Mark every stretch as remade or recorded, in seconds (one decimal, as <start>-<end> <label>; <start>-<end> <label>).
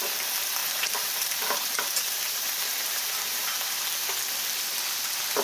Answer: 0.0-0.6 recorded; 0.6-3.8 remade; 3.8-5.4 recorded